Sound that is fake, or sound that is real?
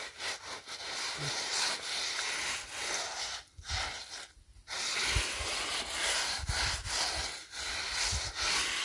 real